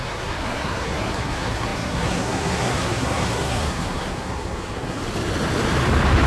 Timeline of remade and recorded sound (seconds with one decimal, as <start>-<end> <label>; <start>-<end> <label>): 0.0-5.0 remade; 5.0-6.3 recorded

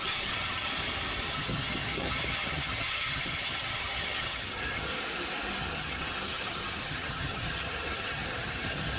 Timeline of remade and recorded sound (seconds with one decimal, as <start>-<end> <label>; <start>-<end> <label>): 0.0-0.7 remade; 0.7-1.3 recorded; 1.3-4.9 remade; 4.9-5.6 recorded; 5.6-9.0 remade

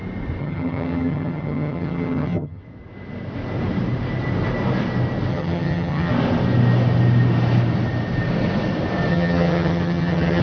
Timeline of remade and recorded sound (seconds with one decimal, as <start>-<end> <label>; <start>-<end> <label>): 0.0-0.4 recorded; 0.4-2.6 remade; 2.6-5.3 recorded; 5.3-6.1 remade; 6.1-9.1 recorded; 9.1-10.4 remade

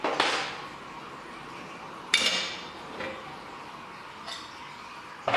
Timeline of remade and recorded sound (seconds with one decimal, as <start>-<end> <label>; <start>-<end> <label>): 0.0-5.4 recorded

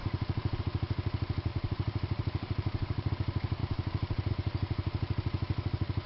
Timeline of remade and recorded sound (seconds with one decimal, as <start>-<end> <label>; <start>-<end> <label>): 0.0-0.6 remade; 0.6-1.5 recorded; 1.5-3.1 remade; 3.1-3.6 recorded; 3.6-4.3 remade; 4.3-6.1 recorded

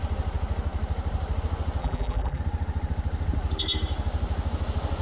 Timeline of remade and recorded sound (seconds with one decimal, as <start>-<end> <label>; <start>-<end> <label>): 0.0-1.8 recorded; 1.8-2.4 remade; 2.4-5.0 recorded

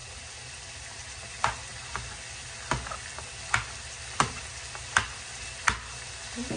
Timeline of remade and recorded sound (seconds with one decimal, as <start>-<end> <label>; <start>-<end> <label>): 0.0-6.6 recorded

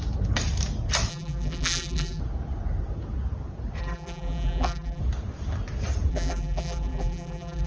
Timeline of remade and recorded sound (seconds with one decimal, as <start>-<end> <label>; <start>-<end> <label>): 0.0-1.1 recorded; 1.1-2.2 remade; 2.2-3.8 recorded; 3.8-5.0 remade; 5.0-6.1 recorded; 6.1-7.7 remade